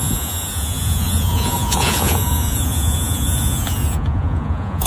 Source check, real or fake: fake